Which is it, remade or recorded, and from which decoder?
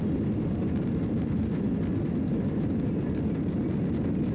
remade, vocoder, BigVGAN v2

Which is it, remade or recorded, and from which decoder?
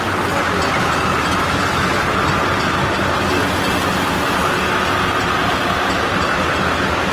recorded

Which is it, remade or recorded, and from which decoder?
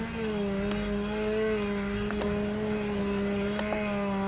recorded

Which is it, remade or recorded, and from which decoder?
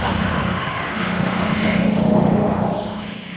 remade, autoencoder, DAC-VAE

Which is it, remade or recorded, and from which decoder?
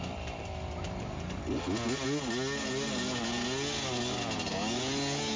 recorded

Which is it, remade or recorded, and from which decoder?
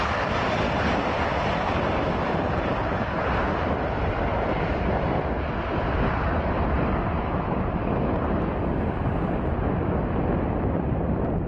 recorded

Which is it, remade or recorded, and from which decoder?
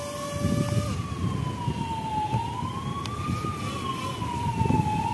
recorded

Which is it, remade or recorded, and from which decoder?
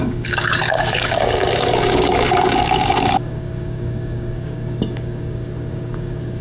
remade, codec, DAC